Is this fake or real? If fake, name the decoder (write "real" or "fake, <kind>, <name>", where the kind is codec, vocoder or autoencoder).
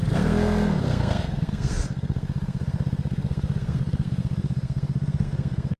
fake, codec, SNAC